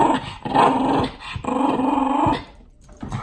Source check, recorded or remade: recorded